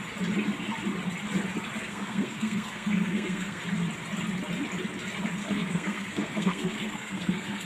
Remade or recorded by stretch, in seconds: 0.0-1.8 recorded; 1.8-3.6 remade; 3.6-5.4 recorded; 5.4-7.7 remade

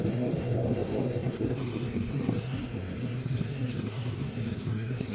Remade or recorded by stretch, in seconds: 0.0-5.1 remade

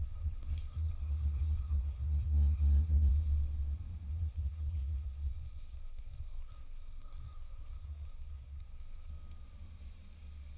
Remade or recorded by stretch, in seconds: 0.0-3.1 remade; 3.1-4.1 recorded; 4.1-9.1 remade; 9.1-10.6 recorded

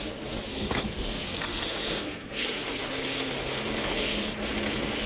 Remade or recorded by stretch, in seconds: 0.0-0.5 recorded; 0.5-2.8 remade; 2.8-5.1 recorded